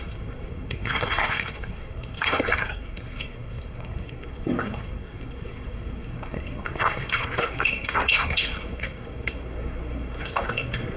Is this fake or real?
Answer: fake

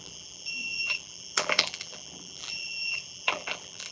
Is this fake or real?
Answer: fake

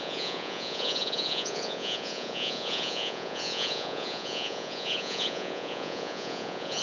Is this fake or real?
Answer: fake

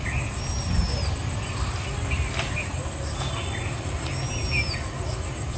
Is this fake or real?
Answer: real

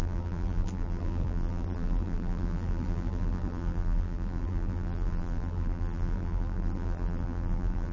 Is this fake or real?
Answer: fake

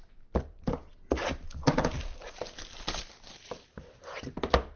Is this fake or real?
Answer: real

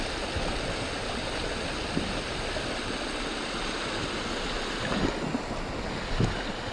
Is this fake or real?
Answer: real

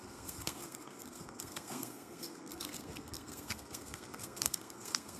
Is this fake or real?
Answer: fake